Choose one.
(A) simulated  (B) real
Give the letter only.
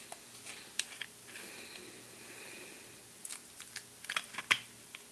B